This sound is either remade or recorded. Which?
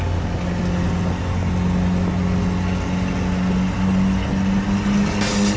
recorded